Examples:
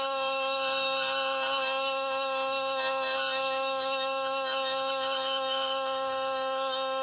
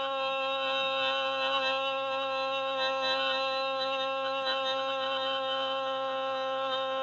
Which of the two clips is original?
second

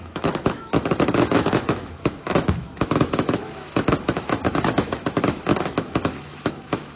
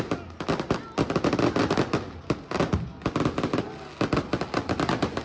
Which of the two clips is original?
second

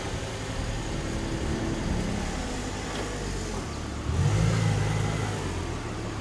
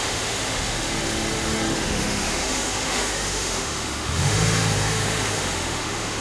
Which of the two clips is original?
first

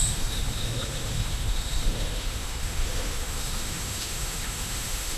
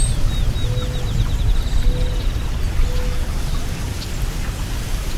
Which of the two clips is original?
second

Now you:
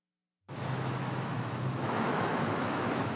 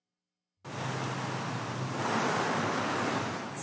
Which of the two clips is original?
second